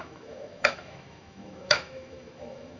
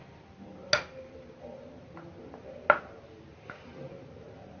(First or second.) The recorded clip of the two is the second